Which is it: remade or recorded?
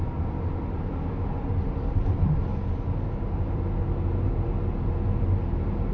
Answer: recorded